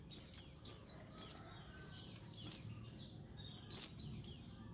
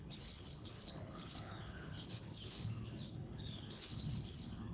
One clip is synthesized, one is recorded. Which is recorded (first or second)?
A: first